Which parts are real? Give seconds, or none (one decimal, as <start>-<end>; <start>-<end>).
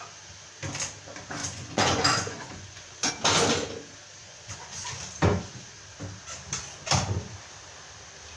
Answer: 0.0-1.4; 3.1-4.2; 5.0-8.4